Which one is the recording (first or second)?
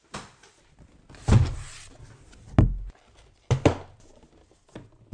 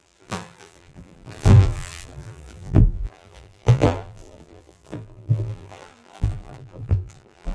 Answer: first